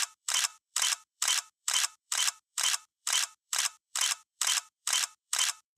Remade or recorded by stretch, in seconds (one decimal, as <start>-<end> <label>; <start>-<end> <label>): 0.0-5.8 remade